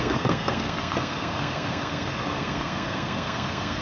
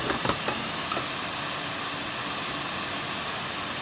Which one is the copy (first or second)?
first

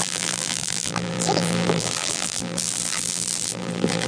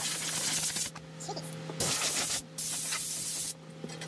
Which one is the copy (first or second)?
first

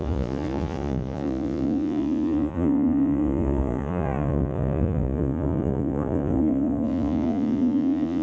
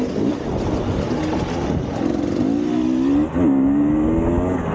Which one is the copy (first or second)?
first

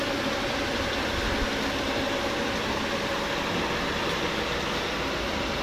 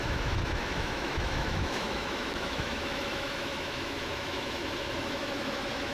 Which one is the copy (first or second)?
second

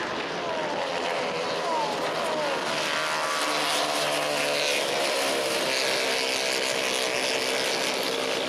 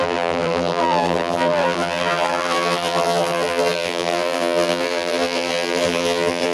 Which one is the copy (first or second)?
second